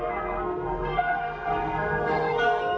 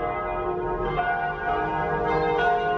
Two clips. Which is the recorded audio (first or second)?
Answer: second